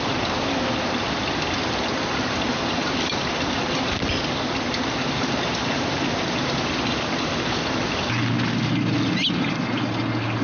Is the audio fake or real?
real